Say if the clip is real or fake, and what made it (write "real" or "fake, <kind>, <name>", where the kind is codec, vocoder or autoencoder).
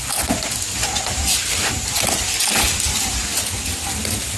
real